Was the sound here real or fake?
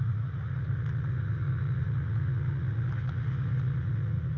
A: fake